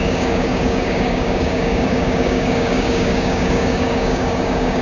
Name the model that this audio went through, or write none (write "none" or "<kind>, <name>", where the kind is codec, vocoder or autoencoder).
codec, DAC